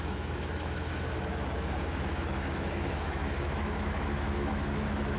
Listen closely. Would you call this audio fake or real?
fake